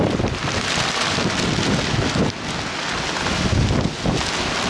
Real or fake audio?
real